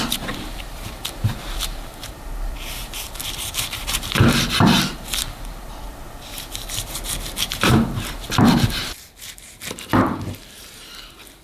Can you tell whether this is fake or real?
fake